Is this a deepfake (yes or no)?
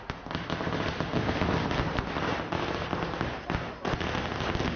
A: no